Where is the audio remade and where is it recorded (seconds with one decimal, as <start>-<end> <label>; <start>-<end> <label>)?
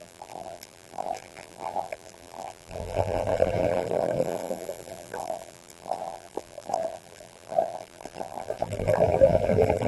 0.0-9.9 remade